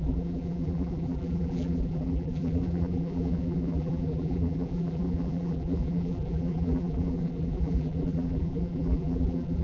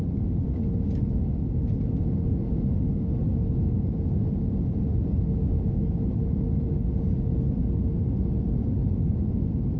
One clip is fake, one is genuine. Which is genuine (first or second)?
second